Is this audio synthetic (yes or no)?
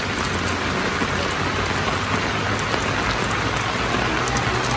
no